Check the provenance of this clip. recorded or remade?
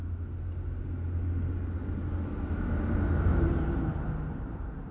recorded